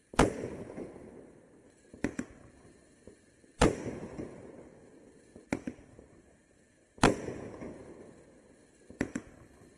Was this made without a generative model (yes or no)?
yes